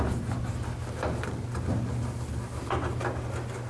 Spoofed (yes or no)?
no